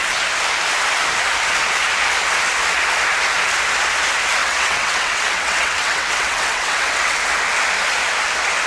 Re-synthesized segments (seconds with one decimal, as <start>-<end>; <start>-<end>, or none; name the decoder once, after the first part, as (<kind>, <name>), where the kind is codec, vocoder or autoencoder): 4.4-7.2 (vocoder, WaveNeXt)